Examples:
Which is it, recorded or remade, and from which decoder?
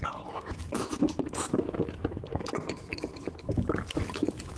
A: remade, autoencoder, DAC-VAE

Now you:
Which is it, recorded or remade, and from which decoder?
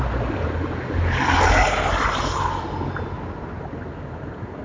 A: recorded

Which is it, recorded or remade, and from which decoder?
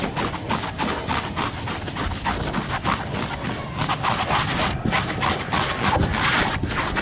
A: recorded